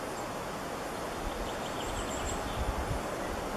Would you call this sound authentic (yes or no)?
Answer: yes